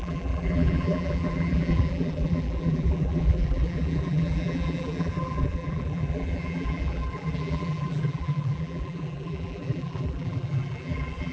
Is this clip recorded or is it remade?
remade